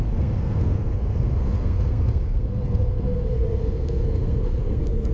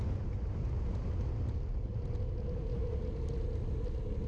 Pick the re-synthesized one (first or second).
first